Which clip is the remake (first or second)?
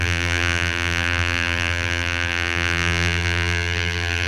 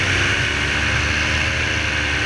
first